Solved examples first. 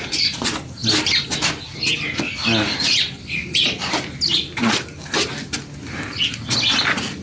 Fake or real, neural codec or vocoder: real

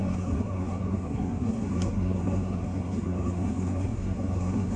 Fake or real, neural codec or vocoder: fake, codec, SNAC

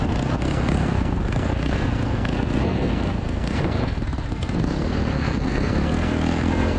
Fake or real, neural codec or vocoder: fake, codec, SNAC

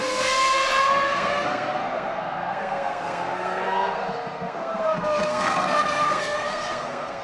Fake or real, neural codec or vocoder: fake, codec, SNAC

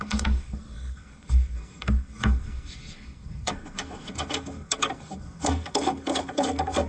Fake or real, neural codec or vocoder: fake, codec, SNAC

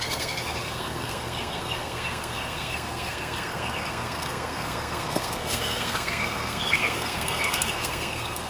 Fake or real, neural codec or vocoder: fake, codec, SNAC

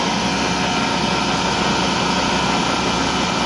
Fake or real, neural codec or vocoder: real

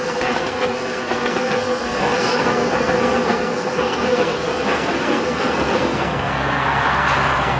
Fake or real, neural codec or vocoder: fake, codec, SNAC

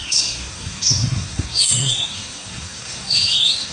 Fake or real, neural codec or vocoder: fake, codec, SNAC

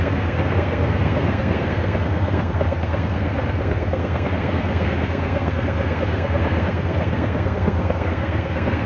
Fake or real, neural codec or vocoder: fake, codec, SNAC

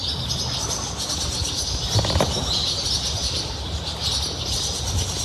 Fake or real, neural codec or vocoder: real